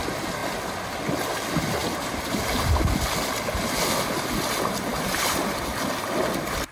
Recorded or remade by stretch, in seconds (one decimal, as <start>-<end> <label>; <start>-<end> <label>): 0.0-1.8 recorded; 1.8-2.4 remade; 2.4-6.7 recorded